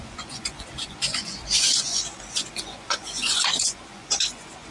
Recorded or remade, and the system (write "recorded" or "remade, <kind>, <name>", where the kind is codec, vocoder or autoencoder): remade, vocoder, Vocos